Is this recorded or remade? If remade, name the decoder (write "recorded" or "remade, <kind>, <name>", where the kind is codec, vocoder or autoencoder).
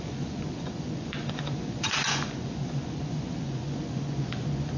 remade, vocoder, Vocos